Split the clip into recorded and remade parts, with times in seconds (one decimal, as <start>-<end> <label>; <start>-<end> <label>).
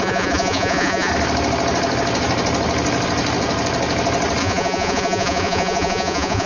0.0-1.1 remade; 1.1-4.4 recorded; 4.4-6.5 remade